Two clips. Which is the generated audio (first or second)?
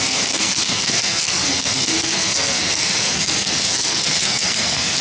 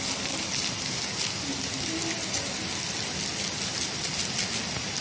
first